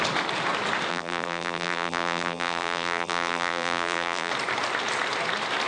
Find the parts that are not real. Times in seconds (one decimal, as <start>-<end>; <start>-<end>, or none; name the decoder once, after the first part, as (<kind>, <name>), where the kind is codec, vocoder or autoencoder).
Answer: 0.9-4.3 (vocoder, BigVGAN v2)